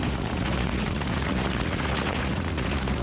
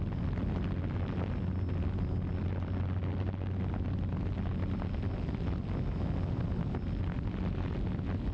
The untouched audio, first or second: second